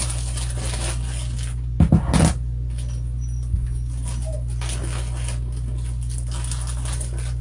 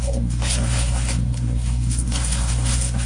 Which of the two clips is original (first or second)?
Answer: first